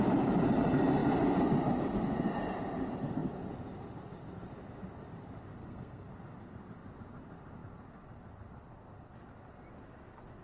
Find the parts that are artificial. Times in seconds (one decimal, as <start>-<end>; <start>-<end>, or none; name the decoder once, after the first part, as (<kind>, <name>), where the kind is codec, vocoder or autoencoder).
5.6-6.1 (codec, SNAC)